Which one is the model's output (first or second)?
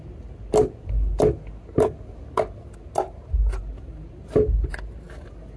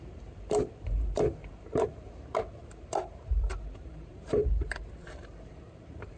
second